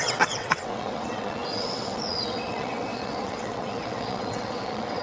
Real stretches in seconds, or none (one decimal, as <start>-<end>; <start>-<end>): none